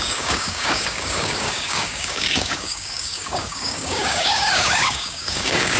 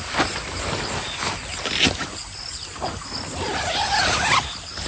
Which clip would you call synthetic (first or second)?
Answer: first